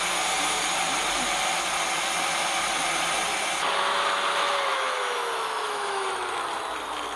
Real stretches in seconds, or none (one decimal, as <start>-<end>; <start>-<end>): 0.0-4.7; 6.1-7.2